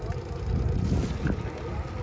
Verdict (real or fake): real